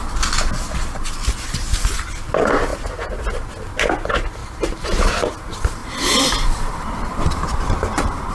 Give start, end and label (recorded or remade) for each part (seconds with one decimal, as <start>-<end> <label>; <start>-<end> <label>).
0.0-2.7 recorded; 2.7-3.2 remade; 3.2-4.4 recorded; 4.4-5.3 remade; 5.3-5.8 recorded; 5.8-8.3 remade